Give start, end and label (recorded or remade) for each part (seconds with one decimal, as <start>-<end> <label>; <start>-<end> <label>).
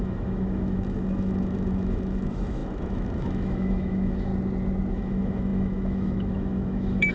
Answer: 0.0-4.3 remade; 4.3-4.9 recorded; 4.9-7.1 remade